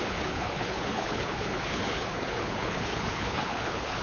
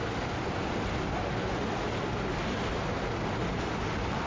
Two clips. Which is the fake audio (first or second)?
first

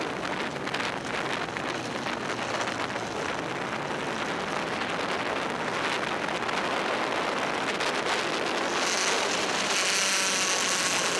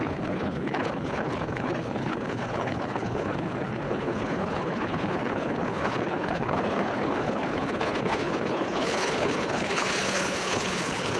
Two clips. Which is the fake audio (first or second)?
second